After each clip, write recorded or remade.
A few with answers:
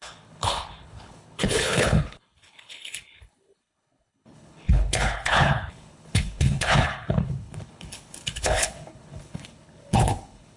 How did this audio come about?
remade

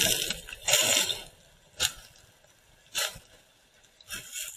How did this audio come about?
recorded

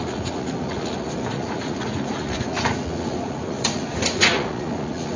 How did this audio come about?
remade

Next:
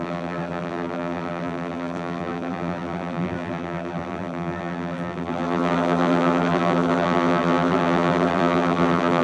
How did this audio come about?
remade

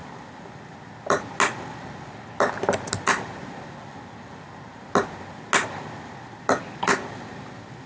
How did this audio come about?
recorded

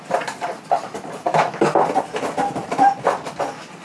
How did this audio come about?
recorded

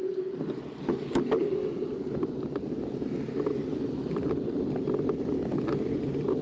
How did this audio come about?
recorded